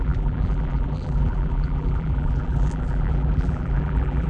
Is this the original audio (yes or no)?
no